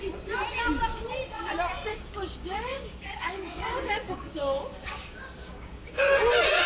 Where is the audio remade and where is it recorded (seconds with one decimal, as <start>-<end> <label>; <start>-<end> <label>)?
0.0-1.9 recorded; 1.9-5.9 remade; 5.9-6.7 recorded